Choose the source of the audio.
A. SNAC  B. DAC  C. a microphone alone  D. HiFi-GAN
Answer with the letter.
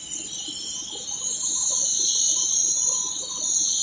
C